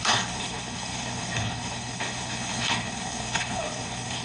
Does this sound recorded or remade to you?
remade